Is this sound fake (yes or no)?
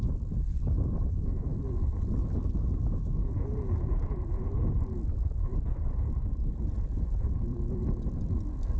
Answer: no